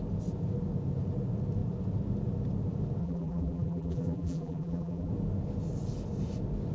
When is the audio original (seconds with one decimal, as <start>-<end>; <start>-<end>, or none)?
0.0-3.0; 5.1-6.7